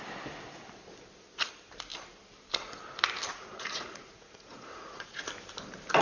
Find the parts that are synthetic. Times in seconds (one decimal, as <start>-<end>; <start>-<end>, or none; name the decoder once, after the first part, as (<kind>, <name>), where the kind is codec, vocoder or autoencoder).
3.4-5.3 (vocoder, Vocos)